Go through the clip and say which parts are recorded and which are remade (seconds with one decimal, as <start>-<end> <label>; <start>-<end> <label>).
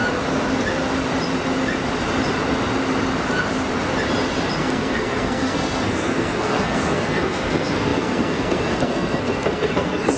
0.0-4.6 recorded; 4.6-10.2 remade